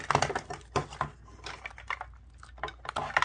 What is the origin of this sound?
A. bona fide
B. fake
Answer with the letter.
A